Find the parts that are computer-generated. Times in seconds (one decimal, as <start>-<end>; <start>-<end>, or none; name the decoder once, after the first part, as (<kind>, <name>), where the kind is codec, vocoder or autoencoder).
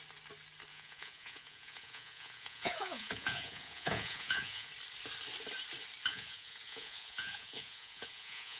0.7-4.7 (vocoder, Vocos); 6.1-8.6